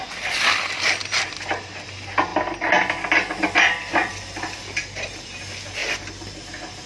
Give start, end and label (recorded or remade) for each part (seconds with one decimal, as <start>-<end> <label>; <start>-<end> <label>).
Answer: 0.0-5.8 recorded; 5.8-6.9 remade